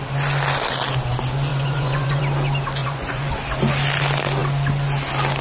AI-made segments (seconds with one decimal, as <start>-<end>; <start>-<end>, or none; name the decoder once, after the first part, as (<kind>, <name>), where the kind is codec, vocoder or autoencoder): 1.5-2.2 (vocoder, Vocos); 2.8-3.3